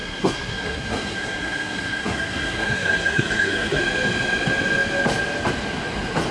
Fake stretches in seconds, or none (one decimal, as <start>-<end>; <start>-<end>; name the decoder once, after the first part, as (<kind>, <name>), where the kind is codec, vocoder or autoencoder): 0.0-3.8 (codec, SNAC)